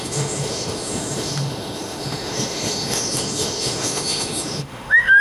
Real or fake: fake